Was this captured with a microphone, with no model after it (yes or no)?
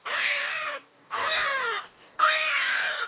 no